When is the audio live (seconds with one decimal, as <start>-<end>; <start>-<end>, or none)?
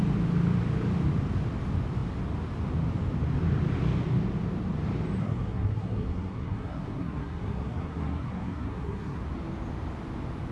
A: 0.0-5.2; 9.2-10.5